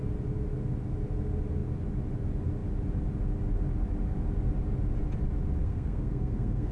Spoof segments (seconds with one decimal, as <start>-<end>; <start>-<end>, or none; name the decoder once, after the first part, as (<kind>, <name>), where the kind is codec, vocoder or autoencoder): 5.6-6.7 (codec, SNAC)